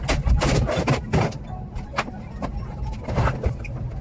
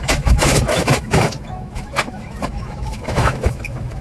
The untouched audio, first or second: first